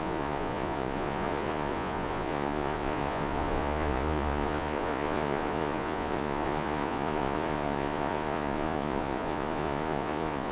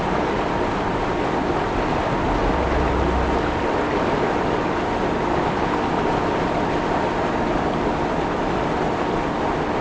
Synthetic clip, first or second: first